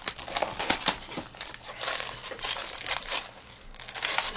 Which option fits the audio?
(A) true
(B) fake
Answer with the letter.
A